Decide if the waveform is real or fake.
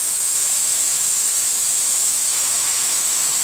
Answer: fake